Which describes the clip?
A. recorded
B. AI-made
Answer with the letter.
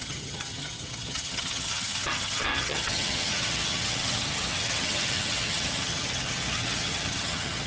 B